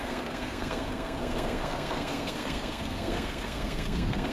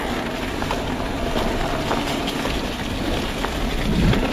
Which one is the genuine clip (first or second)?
second